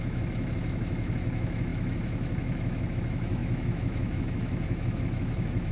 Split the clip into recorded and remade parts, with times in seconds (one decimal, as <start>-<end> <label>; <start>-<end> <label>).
0.0-5.7 remade